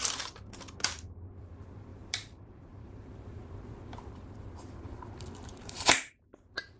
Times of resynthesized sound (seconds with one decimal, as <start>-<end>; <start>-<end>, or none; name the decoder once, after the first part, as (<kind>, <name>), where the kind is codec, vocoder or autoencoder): 1.9-3.4 (vocoder, BigVGAN v2); 5.5-6.8